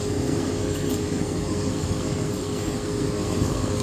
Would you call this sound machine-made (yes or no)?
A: yes